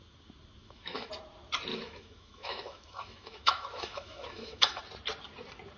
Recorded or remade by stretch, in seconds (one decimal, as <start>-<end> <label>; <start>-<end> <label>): 0.0-0.6 recorded; 0.6-1.1 remade; 1.1-1.7 recorded; 1.7-4.8 remade; 4.8-5.8 recorded